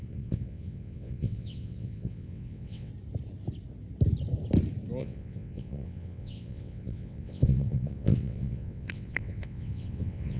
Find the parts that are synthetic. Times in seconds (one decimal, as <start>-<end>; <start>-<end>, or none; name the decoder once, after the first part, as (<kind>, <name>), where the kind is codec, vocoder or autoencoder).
0.0-2.9 (vocoder, WaveNeXt); 5.0-10.4